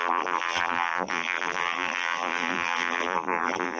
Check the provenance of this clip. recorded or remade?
remade